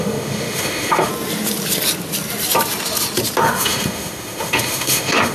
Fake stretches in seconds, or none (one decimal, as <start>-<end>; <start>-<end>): 0.0-1.1; 3.4-5.3